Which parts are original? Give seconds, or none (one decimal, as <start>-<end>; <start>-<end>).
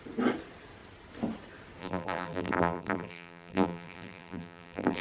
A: 0.0-1.8